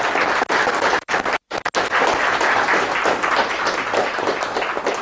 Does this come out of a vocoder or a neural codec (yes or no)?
no